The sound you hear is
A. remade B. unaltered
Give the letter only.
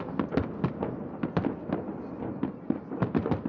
B